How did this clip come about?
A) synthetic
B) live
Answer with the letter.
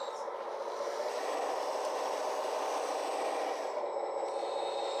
B